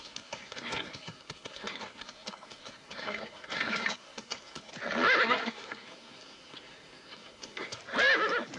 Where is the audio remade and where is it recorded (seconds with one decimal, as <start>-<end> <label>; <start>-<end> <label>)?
0.0-4.7 remade; 4.7-5.2 recorded; 5.2-7.8 remade; 7.8-8.6 recorded